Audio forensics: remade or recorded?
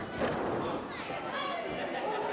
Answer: recorded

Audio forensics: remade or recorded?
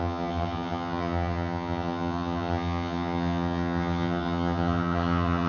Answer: remade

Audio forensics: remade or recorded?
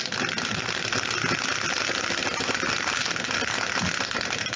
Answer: recorded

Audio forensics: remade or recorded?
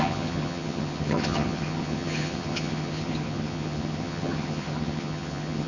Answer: remade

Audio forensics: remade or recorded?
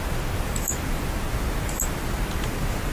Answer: recorded